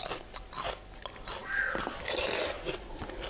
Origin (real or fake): real